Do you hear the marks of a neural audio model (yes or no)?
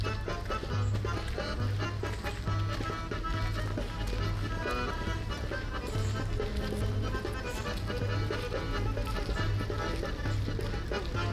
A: no